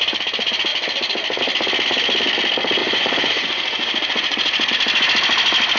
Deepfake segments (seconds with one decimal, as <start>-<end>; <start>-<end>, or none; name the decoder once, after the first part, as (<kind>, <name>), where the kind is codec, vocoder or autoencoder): 2.8-4.7 (vocoder, Vocos)